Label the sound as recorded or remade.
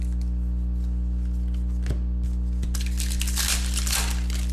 recorded